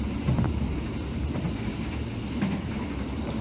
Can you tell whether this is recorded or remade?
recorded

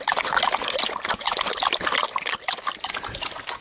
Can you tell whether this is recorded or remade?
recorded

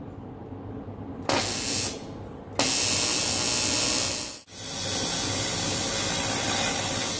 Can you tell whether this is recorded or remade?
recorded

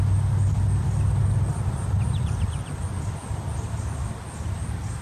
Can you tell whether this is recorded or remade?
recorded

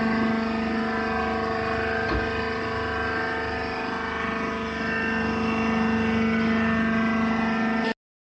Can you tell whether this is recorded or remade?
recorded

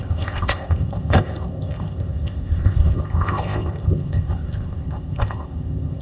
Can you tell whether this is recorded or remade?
remade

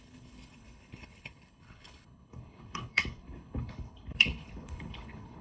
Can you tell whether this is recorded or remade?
remade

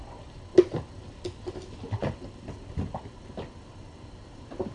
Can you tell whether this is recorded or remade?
recorded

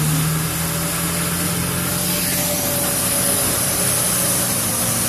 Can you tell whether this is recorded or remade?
recorded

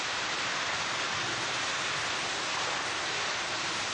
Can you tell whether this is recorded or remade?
recorded